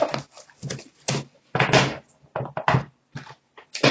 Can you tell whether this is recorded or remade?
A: recorded